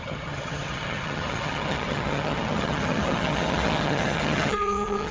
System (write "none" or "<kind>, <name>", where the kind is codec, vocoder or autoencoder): vocoder, HiFi-GAN